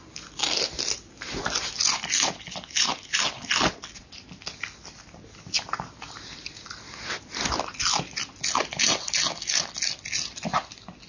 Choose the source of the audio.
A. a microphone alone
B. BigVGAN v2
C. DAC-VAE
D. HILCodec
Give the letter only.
A